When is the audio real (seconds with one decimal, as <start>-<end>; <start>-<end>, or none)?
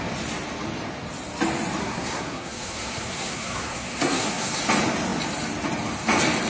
0.0-1.8; 4.6-6.5